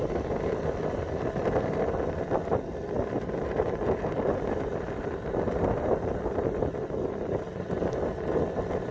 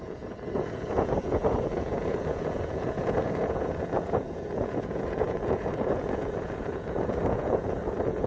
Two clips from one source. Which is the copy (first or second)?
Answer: second